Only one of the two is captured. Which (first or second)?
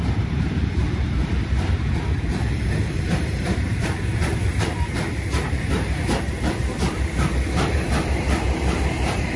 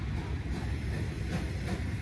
second